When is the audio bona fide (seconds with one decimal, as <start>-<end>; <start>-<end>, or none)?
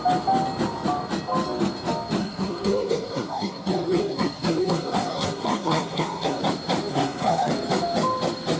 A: 0.0-2.2; 6.4-6.9; 7.5-8.6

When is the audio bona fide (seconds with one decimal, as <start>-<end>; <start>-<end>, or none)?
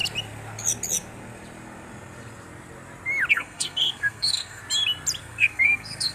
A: 0.0-3.3; 4.6-5.2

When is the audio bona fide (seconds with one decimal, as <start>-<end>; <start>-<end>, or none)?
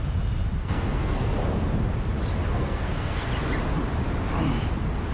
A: 0.0-0.6; 1.3-2.5; 3.3-5.1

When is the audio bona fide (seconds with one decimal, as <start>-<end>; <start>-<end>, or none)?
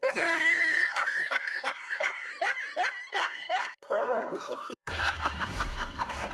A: 2.3-3.1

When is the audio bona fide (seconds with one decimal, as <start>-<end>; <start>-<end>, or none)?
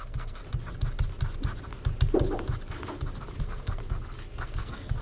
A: 0.4-3.4; 3.8-4.4